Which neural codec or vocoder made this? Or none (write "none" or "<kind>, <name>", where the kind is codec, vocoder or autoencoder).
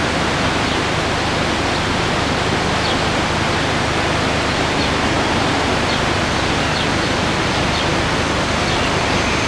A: none